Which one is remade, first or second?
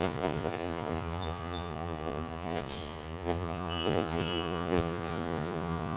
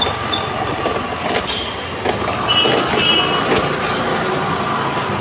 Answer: first